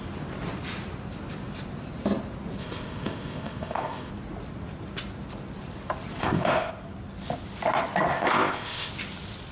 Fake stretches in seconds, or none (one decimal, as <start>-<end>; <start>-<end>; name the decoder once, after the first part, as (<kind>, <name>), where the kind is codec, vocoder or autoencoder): 2.6-4.1 (codec, ZipCodec); 6.2-6.7; 8.1-8.9